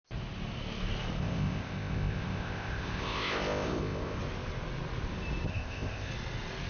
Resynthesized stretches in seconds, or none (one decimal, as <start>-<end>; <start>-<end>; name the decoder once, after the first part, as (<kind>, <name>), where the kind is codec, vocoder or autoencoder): 1.2-4.2 (codec, ZipCodec); 5.5-6.1